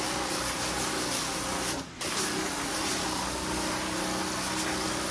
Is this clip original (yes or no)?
yes